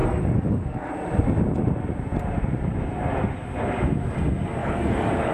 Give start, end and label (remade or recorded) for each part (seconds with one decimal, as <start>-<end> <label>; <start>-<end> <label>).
0.0-0.9 remade; 0.9-4.6 recorded; 4.6-5.3 remade